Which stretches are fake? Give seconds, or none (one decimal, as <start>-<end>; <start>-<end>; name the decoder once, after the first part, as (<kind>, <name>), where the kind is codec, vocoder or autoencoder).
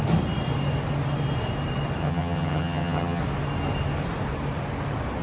2.0-3.2 (vocoder, HiFi-GAN)